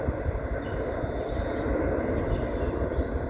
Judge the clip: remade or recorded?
recorded